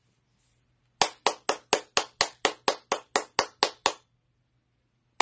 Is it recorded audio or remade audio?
recorded